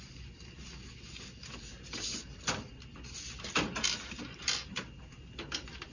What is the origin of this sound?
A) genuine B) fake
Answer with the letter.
A